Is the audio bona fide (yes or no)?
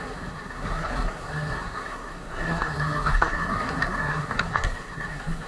no